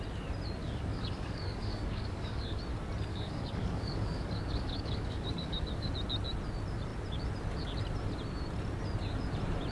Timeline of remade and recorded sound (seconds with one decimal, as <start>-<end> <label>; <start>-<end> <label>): 0.0-0.6 recorded; 0.6-2.6 remade; 2.6-3.1 recorded; 3.1-5.9 remade; 5.9-9.7 recorded